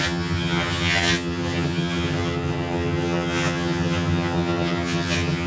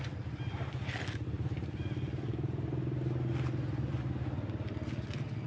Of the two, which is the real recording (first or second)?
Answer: second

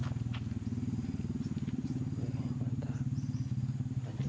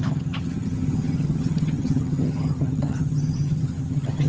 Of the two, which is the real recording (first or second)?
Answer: first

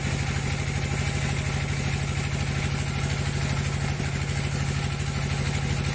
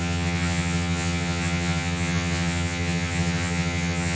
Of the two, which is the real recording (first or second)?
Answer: first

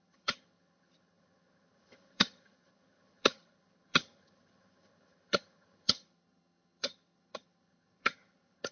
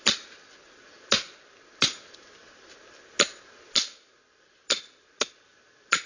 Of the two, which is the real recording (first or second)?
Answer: second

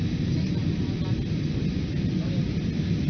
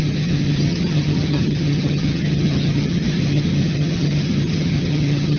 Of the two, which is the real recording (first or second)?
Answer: first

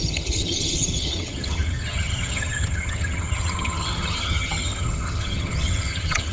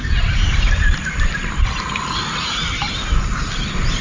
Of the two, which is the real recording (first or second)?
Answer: second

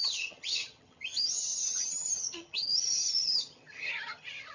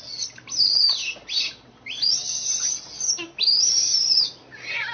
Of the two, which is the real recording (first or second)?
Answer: second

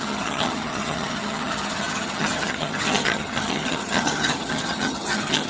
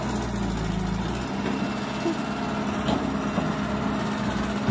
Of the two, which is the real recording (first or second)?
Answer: second